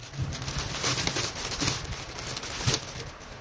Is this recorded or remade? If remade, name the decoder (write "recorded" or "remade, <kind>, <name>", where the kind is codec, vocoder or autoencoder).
recorded